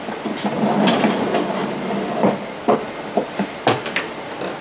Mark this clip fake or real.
real